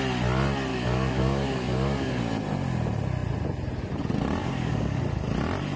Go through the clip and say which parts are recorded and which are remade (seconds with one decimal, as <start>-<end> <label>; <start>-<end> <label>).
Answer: 0.0-0.7 recorded; 0.7-2.2 remade; 2.2-4.4 recorded; 4.4-5.0 remade; 5.0-5.8 recorded